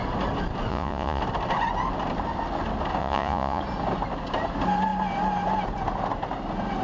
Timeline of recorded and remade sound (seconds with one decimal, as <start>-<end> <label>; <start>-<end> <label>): 0.0-0.7 recorded; 0.7-1.2 remade; 1.2-3.0 recorded; 3.0-3.6 remade; 3.6-6.8 recorded